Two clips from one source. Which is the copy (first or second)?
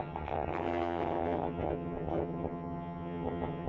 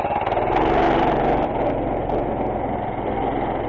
first